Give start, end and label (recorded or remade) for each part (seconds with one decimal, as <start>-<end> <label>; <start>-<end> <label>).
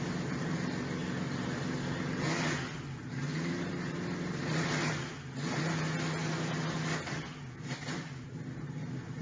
0.0-9.2 recorded